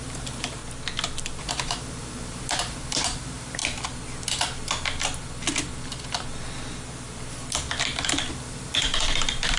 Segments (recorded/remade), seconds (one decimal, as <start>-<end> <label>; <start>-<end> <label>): 0.0-0.6 remade; 0.6-1.4 recorded; 1.4-3.6 remade; 3.6-8.3 recorded; 8.3-9.6 remade